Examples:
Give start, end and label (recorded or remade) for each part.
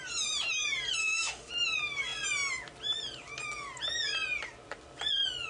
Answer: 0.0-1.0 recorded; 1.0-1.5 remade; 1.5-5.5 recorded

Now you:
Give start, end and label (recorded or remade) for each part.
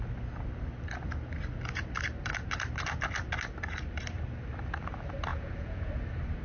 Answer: 0.0-5.3 recorded; 5.3-5.9 remade; 5.9-6.4 recorded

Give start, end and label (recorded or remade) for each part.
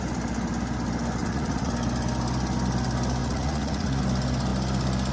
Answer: 0.0-1.2 recorded; 1.2-1.7 remade; 1.7-3.2 recorded; 3.2-4.0 remade; 4.0-5.1 recorded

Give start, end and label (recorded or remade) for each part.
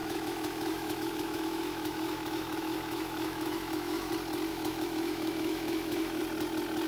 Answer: 0.0-4.1 remade; 4.1-4.5 recorded; 4.5-6.2 remade; 6.2-6.9 recorded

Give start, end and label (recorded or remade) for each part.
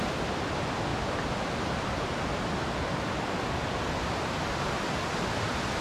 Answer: 0.0-5.8 recorded